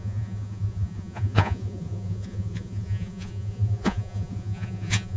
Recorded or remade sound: remade